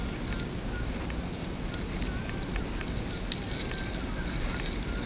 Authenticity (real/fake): real